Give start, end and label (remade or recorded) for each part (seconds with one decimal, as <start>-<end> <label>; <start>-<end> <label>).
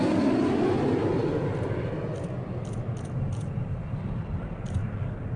0.0-5.4 recorded